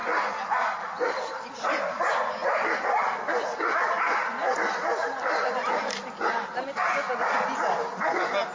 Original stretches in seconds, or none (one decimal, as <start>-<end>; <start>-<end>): 2.0-2.4; 4.4-4.9; 6.4-8.5